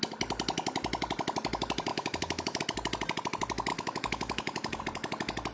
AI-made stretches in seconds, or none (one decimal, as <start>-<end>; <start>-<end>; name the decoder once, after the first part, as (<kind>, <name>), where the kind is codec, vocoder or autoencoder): 1.9-2.6 (autoencoder, DAC-VAE); 3.7-4.8